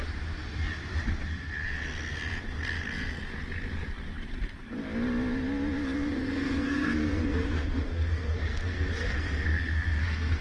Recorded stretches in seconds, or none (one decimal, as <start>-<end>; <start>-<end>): 0.0-6.2